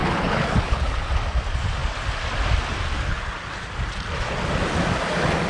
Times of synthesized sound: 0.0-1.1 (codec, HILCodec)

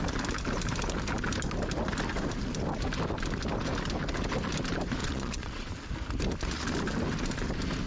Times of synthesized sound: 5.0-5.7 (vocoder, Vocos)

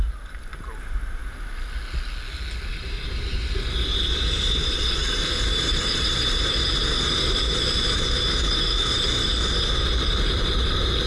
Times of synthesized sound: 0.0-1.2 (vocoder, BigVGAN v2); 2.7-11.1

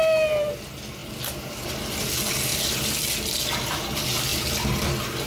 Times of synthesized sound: none

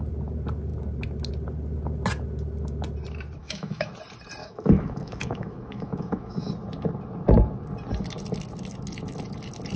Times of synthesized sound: 3.4-3.9 (autoencoder, DAC-VAE); 4.4-6.5

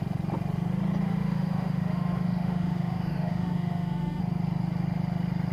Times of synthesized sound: 1.0-4.2 (autoencoder, DAC-VAE)

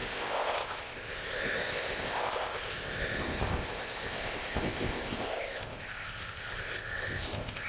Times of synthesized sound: 0.0-7.7 (codec, ZipCodec)

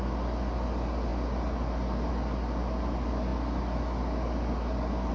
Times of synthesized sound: none